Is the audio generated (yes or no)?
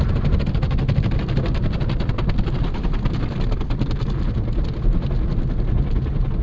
no